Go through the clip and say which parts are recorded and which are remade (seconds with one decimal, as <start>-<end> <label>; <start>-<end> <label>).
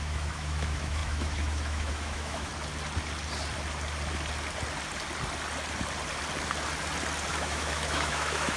0.0-2.5 remade; 2.5-7.3 recorded; 7.3-8.6 remade